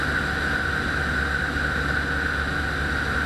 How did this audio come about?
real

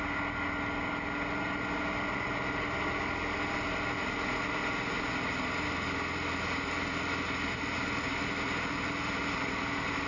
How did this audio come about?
real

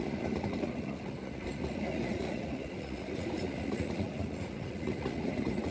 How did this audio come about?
fake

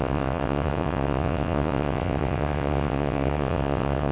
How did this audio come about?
fake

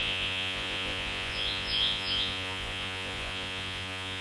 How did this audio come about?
fake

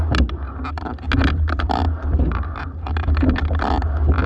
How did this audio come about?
real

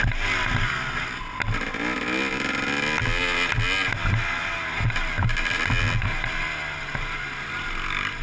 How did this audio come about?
real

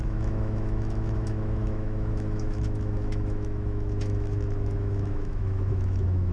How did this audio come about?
fake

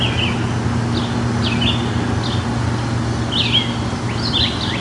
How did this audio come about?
real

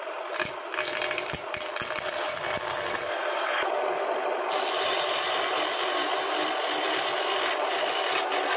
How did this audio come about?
real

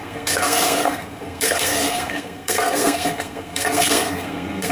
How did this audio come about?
fake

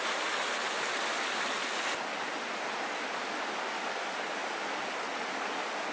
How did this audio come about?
real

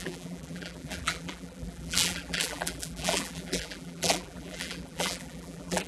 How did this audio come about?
fake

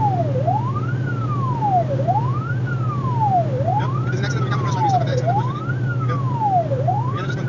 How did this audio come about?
real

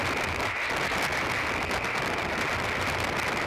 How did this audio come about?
real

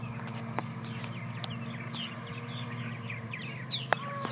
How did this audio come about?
real